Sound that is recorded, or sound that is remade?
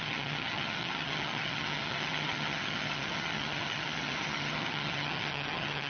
remade